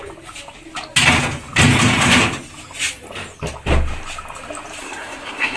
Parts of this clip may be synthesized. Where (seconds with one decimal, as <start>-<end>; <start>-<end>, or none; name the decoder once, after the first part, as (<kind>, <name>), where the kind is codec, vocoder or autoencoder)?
4.8-5.6 (codec, SNAC)